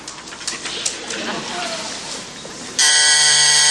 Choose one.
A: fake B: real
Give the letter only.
B